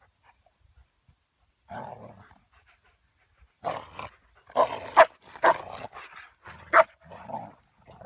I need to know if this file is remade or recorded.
remade